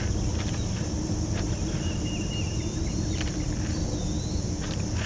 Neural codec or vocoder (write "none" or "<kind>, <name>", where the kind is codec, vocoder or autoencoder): vocoder, BigVGAN v2